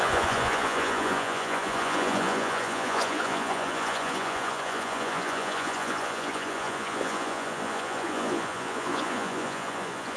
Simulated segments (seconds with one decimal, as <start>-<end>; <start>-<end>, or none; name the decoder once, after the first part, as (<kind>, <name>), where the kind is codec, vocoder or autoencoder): 0.0-10.2 (vocoder, Vocos)